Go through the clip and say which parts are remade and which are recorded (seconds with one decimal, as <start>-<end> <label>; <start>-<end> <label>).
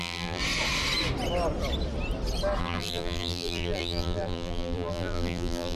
0.0-0.4 remade; 0.4-2.6 recorded; 2.6-5.7 remade